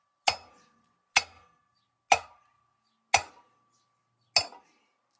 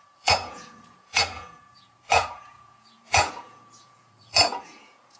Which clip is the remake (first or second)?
second